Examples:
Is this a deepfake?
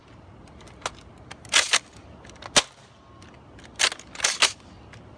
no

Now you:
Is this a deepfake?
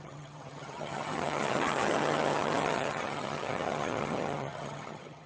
yes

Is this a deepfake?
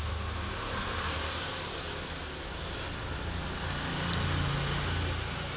no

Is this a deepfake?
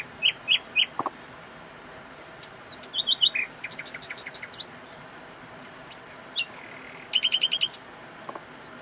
no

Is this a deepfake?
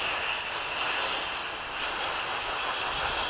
no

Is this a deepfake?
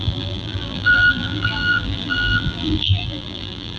yes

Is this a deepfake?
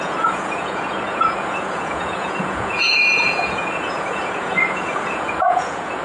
yes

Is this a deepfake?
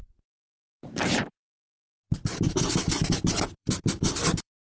yes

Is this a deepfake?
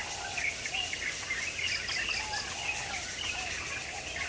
no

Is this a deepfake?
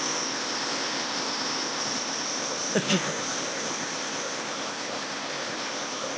yes